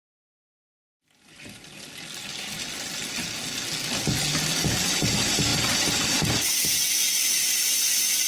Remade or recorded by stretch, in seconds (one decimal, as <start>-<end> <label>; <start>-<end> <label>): 0.0-8.3 recorded